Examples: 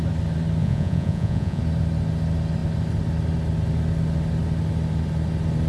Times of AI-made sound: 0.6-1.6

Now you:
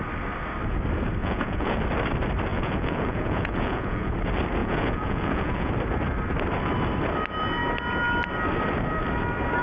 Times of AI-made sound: 1.2-1.8; 2.5-4.1; 4.6-5.7